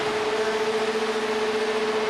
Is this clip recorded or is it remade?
recorded